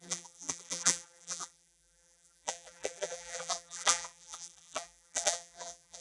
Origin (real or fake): fake